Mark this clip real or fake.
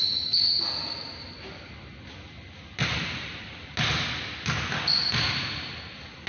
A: real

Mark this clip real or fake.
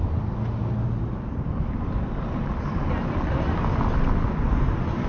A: real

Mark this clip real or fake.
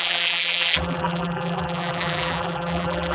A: fake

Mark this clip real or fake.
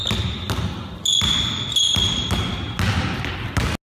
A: real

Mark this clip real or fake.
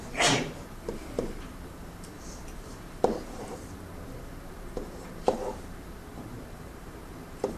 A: fake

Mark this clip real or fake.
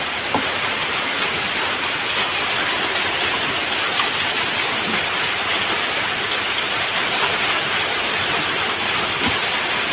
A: fake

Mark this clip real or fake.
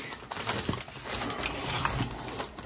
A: real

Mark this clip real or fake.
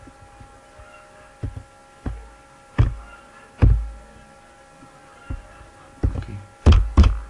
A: real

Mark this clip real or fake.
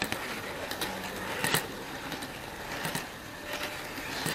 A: real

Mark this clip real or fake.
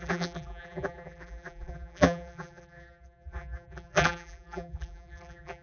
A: fake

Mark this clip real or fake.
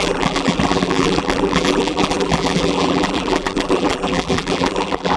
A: fake